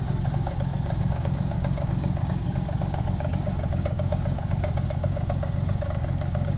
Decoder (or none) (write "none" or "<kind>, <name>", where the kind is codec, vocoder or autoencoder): codec, DAC